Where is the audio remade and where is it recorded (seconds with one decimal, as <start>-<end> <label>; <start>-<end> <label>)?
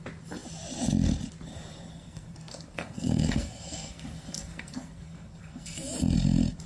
0.0-1.9 recorded; 1.9-5.9 remade; 5.9-6.7 recorded